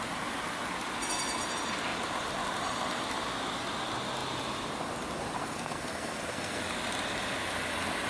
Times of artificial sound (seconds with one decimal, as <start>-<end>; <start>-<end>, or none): 5.4-6.6